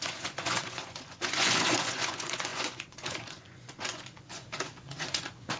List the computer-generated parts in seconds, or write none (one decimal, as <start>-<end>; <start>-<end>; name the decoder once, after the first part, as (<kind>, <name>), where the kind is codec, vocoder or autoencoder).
0.0-5.6 (vocoder, Vocos)